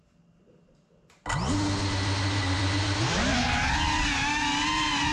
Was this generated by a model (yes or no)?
no